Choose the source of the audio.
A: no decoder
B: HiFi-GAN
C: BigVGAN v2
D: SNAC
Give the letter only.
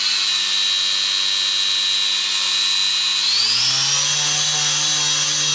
A